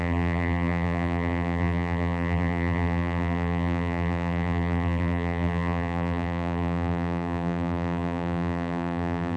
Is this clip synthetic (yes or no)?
yes